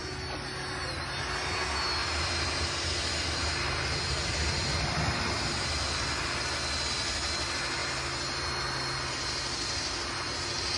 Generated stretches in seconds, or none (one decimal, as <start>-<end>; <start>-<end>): none